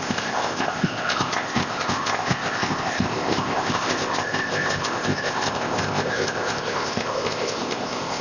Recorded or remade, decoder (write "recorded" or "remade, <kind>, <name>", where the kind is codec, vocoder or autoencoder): remade, codec, ZipCodec